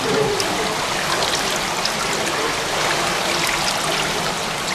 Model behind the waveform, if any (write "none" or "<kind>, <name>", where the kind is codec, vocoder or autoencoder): none